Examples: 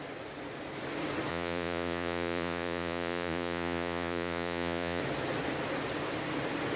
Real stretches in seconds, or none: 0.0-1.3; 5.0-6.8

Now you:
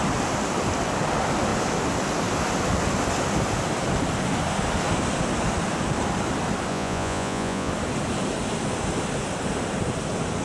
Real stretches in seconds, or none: 0.0-6.7; 7.7-10.4

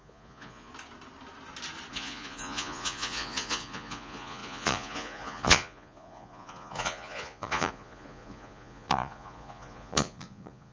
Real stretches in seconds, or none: 0.7-1.9

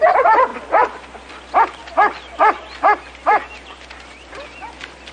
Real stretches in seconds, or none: 0.0-5.1

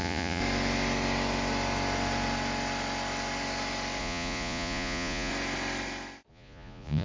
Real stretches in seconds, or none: 0.4-4.0; 5.3-6.3

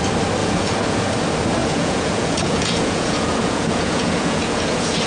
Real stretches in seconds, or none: 0.0-0.4; 1.1-1.6

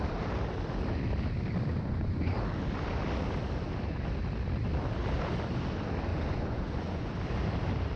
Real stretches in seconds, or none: 0.0-1.7; 2.3-6.1; 7.1-8.0

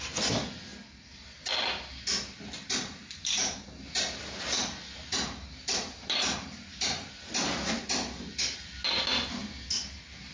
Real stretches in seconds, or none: 0.0-10.3